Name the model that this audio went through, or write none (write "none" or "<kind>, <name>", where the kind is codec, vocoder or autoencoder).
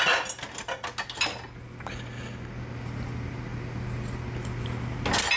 none